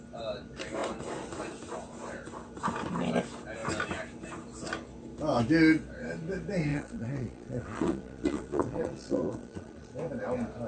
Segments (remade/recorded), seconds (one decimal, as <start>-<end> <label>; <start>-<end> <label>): 0.0-6.7 recorded; 6.7-9.9 remade; 9.9-10.7 recorded